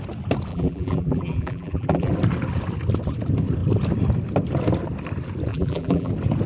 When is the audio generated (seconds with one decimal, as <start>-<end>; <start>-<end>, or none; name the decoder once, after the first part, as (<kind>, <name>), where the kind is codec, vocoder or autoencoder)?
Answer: 0.5-2.1 (vocoder, BigVGAN v2); 5.5-6.1

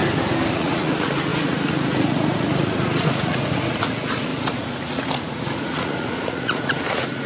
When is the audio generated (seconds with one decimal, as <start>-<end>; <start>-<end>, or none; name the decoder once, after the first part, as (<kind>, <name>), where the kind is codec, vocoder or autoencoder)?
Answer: 0.5-7.3 (vocoder, Vocos)

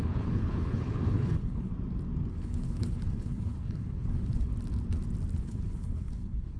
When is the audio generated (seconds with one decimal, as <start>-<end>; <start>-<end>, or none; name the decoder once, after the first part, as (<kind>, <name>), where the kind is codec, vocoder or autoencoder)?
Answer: 0.0-1.7 (codec, HILCodec); 2.3-4.5; 5.4-6.6

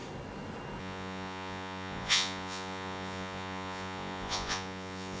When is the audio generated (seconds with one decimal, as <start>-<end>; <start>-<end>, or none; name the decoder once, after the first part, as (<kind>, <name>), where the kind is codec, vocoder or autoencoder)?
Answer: 0.8-5.2 (vocoder, Vocos)

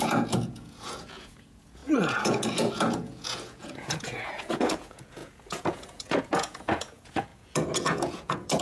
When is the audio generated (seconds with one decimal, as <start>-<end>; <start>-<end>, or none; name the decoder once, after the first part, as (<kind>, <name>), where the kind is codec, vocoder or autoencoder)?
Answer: 0.0-8.6 (vocoder, Vocos)